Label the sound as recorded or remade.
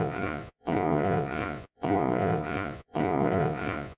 remade